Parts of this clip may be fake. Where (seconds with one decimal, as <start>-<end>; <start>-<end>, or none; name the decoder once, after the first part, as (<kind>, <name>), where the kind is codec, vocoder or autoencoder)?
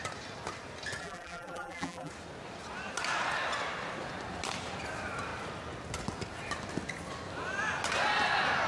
1.0-2.1 (vocoder, BigVGAN v2)